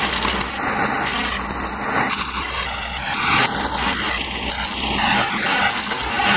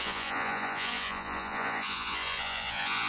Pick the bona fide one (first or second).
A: first